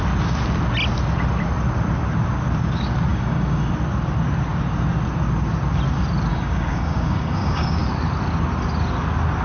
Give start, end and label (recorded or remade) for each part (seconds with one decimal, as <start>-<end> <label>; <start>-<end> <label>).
0.0-3.1 recorded; 3.1-3.7 remade; 3.7-6.3 recorded; 6.3-7.8 remade; 7.8-9.4 recorded